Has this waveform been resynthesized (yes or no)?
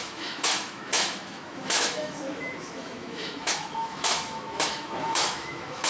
yes